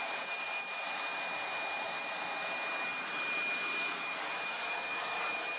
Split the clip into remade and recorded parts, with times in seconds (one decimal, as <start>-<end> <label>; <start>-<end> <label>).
0.0-1.1 remade; 1.1-4.5 recorded; 4.5-5.6 remade